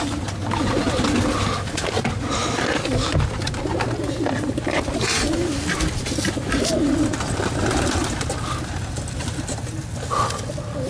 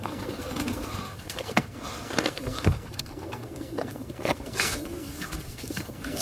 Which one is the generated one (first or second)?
second